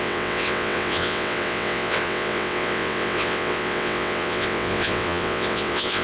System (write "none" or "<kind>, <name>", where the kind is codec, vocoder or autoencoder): vocoder, WaveNeXt